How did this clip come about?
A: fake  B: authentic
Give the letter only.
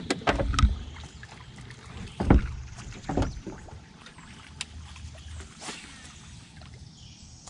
B